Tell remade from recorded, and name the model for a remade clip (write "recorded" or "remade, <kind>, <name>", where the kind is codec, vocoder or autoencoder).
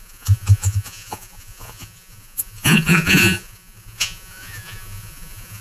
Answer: remade, vocoder, Vocos